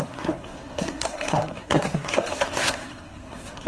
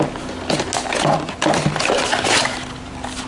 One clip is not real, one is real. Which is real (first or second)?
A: second